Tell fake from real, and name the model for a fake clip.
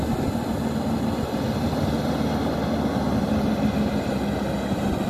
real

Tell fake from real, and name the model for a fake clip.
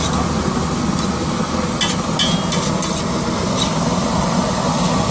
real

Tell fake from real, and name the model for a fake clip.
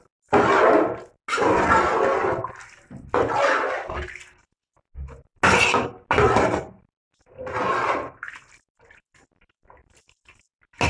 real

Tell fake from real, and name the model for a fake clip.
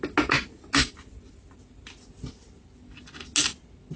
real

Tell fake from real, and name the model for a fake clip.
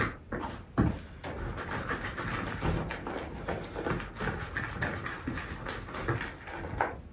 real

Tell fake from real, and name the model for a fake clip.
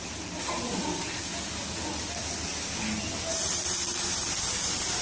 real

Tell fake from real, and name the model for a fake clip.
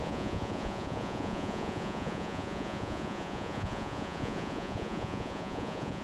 fake, vocoder, Vocos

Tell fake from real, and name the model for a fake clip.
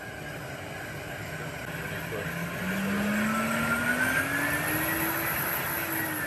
real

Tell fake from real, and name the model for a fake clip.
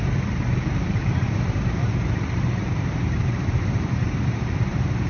fake, vocoder, BigVGAN v2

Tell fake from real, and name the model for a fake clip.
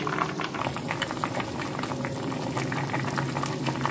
real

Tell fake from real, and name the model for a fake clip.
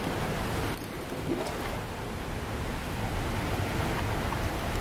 fake, vocoder, BigVGAN v2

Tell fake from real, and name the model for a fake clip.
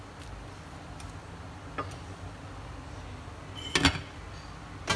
real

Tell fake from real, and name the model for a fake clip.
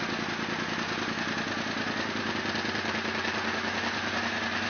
real